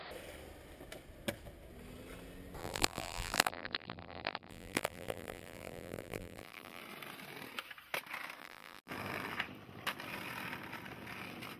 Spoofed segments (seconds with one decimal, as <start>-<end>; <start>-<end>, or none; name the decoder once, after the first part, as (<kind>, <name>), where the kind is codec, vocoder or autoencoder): 2.6-6.8 (vocoder, BigVGAN v2); 8.4-8.9